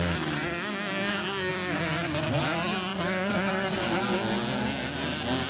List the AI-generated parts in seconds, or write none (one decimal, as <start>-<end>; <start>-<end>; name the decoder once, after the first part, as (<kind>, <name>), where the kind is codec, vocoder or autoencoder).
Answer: 0.7-1.5 (codec, SNAC)